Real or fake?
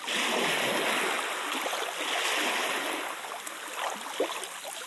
real